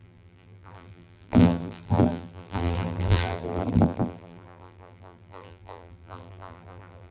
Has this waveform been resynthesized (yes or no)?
yes